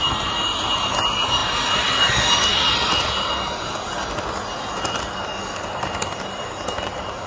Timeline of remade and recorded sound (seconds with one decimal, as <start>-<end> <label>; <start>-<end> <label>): 0.0-7.3 recorded